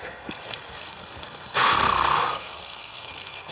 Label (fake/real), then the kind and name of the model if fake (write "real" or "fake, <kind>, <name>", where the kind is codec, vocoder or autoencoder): fake, codec, SNAC